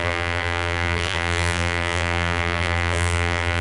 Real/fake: fake